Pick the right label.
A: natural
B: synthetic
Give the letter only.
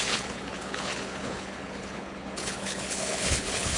B